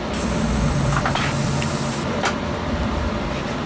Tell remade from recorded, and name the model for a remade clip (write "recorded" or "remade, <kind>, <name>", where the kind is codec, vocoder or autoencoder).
recorded